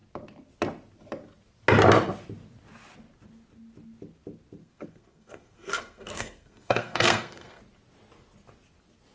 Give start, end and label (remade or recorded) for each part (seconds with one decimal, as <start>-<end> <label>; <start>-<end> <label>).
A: 0.0-4.6 recorded; 4.6-7.6 remade; 7.6-9.1 recorded